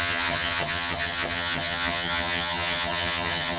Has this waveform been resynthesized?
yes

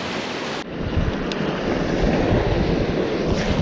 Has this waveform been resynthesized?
no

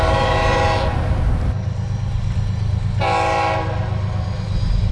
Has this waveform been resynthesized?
no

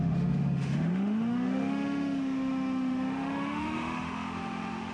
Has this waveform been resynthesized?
yes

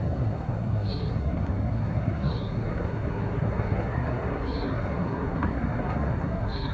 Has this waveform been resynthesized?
yes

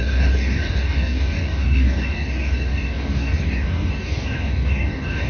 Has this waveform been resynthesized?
yes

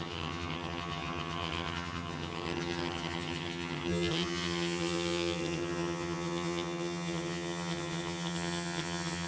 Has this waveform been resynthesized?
yes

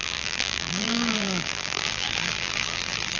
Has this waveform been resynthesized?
yes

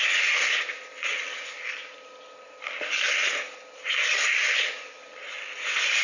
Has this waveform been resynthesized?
no